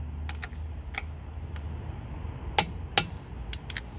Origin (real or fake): real